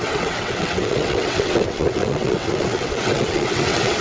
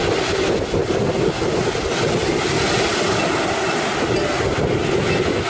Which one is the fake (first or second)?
first